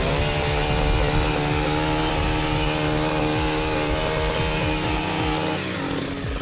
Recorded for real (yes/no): yes